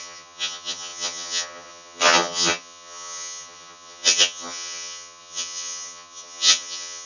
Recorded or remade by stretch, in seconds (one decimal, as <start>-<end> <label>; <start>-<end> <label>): 0.0-7.1 remade